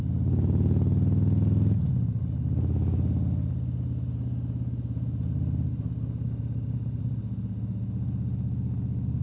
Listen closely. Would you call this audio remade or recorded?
recorded